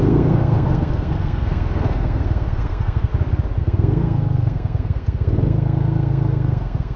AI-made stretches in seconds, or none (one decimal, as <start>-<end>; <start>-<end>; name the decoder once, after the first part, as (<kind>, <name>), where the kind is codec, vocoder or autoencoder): 0.0-3.1 (codec, SNAC); 3.6-7.0